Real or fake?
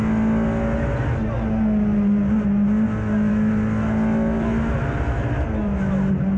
real